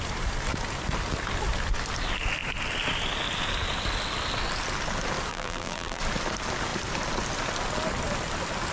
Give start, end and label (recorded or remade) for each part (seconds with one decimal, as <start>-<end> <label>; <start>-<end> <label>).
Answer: 0.0-5.3 recorded; 5.3-6.0 remade; 6.0-8.7 recorded